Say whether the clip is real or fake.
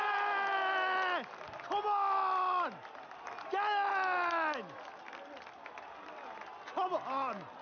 real